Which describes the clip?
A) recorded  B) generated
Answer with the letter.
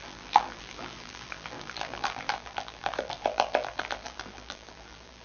B